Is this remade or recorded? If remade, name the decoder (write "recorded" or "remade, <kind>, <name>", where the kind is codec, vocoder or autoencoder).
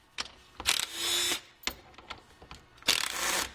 recorded